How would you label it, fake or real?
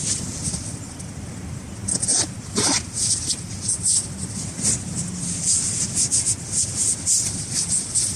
real